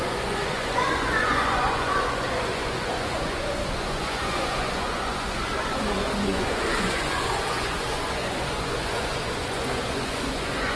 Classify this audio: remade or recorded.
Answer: remade